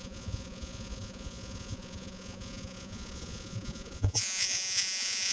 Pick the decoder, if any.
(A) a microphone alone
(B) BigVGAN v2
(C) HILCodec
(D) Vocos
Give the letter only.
D